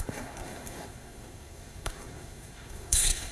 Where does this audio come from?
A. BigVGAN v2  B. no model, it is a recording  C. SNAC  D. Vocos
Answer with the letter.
C